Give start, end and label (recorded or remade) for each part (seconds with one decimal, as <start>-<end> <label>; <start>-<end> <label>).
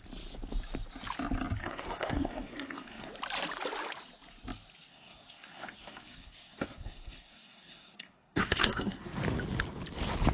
0.0-1.6 recorded; 1.6-3.1 remade; 3.1-4.9 recorded; 4.9-9.2 remade; 9.2-10.3 recorded